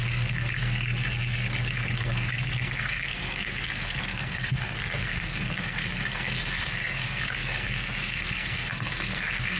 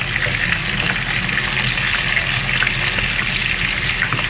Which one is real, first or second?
second